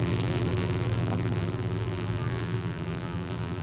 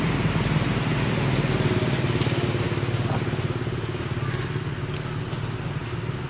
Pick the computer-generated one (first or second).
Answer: first